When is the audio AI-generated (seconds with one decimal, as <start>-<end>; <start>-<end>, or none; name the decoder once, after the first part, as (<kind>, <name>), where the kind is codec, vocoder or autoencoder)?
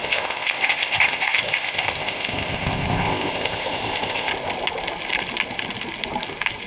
0.0-4.3 (codec, ZipCodec)